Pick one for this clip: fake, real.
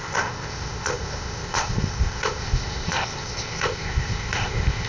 fake